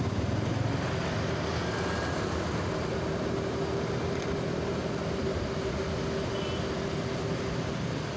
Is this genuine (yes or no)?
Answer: yes